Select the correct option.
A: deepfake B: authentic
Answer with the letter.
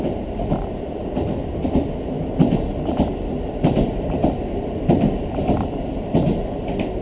A